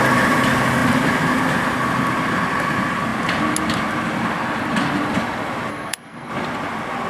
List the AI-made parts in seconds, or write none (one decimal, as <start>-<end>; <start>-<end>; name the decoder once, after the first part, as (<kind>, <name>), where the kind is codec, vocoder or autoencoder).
5.7-6.3 (codec, SNAC)